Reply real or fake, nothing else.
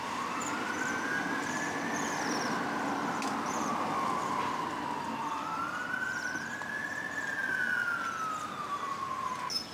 real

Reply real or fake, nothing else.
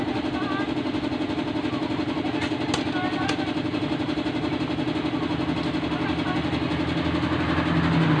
real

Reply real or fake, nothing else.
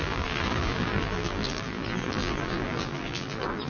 fake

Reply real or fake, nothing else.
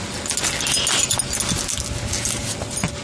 real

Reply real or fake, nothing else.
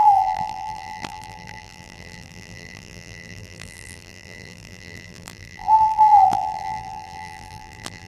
fake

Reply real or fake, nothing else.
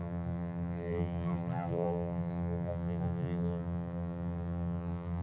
fake